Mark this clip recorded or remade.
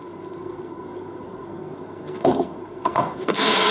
remade